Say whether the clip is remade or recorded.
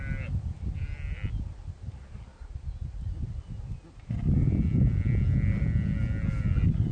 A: recorded